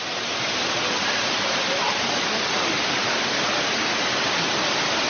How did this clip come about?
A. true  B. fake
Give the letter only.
A